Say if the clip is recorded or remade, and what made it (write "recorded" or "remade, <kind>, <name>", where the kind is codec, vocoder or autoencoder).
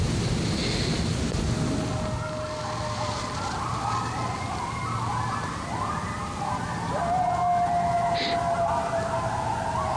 recorded